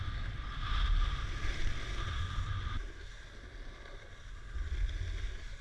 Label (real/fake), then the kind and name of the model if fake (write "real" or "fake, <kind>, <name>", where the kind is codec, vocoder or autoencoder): real